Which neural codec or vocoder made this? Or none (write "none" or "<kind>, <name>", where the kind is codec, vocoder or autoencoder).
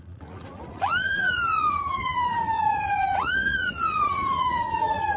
vocoder, Vocos